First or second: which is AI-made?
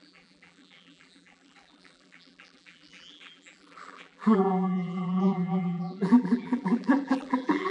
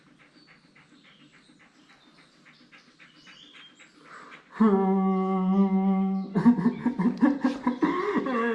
first